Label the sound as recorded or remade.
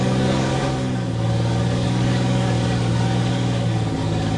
remade